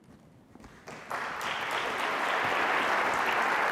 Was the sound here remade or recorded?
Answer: recorded